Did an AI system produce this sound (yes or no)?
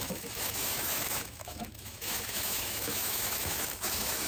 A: yes